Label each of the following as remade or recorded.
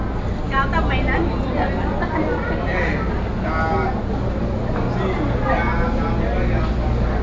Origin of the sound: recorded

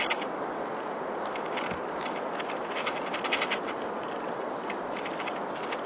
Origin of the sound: recorded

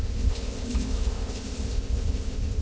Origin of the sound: remade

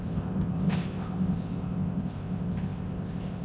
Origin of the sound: remade